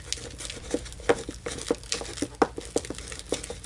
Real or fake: real